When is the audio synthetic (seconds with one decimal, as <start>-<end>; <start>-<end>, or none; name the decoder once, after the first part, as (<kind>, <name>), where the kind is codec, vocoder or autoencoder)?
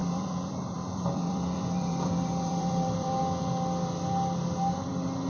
0.0-3.2 (vocoder, BigVGAN v2)